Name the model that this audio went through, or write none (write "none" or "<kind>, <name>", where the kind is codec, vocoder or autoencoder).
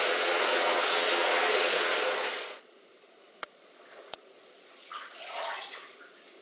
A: vocoder, Vocos